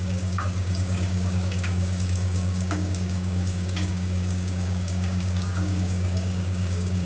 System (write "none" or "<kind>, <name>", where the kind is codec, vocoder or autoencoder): codec, DAC